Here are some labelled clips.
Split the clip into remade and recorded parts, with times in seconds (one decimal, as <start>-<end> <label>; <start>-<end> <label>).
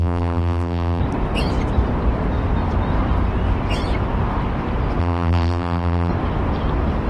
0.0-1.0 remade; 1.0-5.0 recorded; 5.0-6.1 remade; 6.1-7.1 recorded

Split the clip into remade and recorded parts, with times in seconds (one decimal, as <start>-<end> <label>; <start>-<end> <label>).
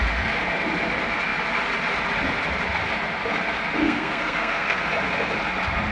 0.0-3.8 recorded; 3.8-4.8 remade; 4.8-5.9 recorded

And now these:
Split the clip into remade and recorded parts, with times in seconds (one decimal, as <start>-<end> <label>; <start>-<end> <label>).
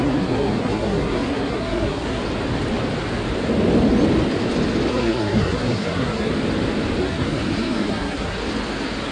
0.0-2.2 remade; 2.2-4.9 recorded; 4.9-6.3 remade; 6.3-7.0 recorded; 7.0-8.4 remade; 8.4-9.1 recorded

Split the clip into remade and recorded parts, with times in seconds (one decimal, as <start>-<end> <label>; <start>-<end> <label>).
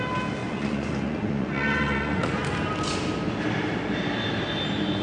0.0-0.4 recorded; 0.4-2.3 remade; 2.3-5.0 recorded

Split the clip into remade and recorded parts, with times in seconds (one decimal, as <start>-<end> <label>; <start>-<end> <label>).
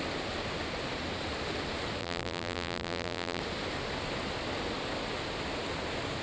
0.0-2.0 recorded; 2.0-3.4 remade; 3.4-6.2 recorded